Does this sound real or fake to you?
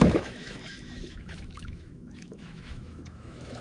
fake